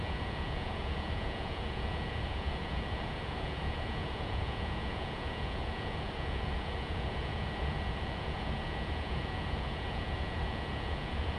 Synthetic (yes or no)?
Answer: yes